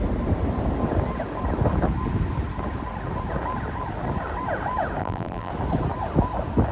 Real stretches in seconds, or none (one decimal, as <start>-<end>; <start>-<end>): 0.0-5.0; 5.5-6.7